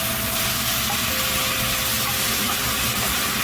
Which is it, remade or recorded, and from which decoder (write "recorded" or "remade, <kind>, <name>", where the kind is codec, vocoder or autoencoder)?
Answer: recorded